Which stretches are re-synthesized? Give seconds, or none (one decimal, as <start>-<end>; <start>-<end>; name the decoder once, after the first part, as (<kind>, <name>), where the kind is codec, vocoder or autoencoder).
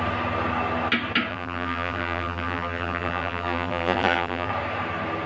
1.3-4.5 (vocoder, BigVGAN v2)